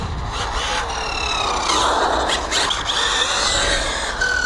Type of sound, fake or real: real